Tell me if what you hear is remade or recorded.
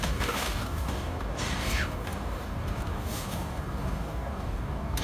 remade